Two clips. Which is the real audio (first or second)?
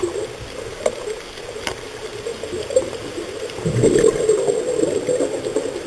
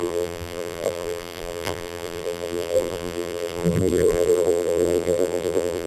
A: first